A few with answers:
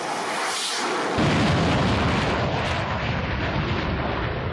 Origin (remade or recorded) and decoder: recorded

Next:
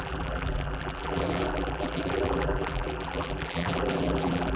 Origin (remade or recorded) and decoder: remade, vocoder, BigVGAN v2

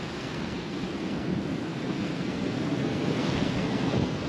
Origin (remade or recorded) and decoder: remade, codec, SNAC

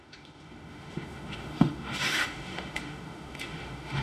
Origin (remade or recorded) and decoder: remade, autoencoder, DAC-VAE